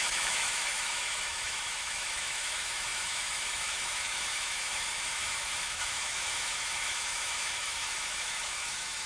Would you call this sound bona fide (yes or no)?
no